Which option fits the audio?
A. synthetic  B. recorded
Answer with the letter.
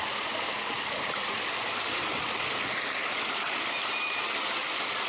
B